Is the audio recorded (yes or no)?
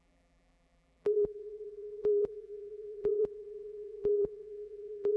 no